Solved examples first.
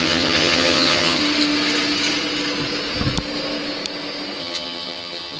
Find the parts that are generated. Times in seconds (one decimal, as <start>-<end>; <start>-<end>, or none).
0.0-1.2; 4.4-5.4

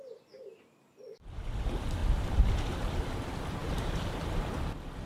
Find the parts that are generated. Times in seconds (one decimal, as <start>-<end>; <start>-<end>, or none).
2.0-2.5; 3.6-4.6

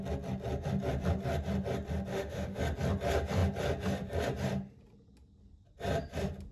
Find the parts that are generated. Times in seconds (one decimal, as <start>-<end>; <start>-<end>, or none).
2.1-2.6